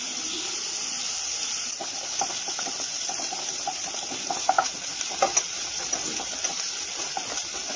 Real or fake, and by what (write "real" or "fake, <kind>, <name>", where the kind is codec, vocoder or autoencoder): real